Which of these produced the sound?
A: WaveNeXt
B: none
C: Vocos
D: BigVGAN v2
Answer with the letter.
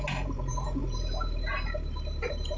D